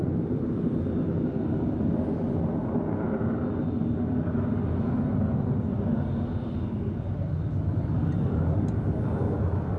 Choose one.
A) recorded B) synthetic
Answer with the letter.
A